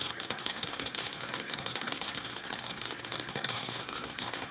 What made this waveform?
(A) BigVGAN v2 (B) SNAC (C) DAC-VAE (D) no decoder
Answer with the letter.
B